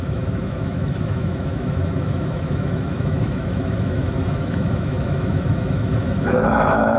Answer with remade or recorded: remade